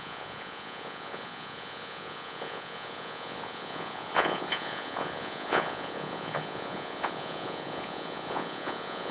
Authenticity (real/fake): fake